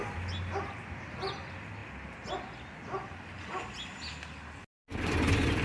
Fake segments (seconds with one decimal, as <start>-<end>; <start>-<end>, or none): none